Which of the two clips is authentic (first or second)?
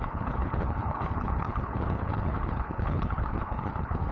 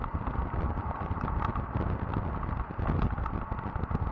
second